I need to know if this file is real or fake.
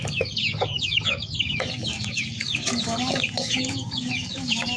fake